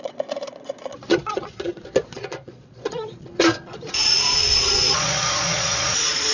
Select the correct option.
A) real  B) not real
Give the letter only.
B